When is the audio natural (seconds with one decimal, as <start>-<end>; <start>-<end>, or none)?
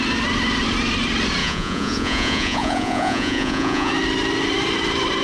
0.0-1.4; 3.9-5.2